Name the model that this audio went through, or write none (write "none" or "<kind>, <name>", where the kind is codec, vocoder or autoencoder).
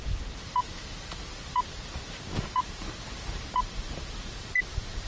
vocoder, BigVGAN v2